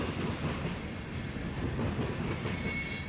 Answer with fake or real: real